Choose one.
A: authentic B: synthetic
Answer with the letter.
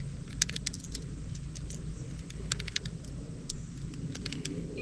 A